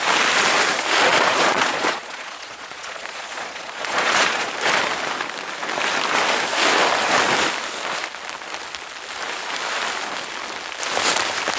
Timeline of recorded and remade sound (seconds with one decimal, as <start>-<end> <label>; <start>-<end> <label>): 0.0-1.1 recorded; 1.1-4.5 remade; 4.5-11.6 recorded